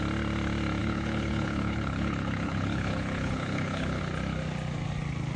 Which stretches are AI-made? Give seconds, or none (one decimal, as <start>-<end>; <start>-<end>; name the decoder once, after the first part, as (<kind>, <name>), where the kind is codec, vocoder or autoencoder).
0.8-4.0 (codec, HILCodec)